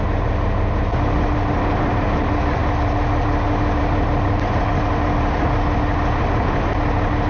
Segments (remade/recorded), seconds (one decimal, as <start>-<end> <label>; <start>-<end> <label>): 0.0-7.3 recorded